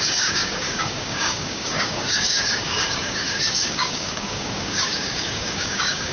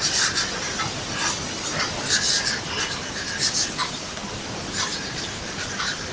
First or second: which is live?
second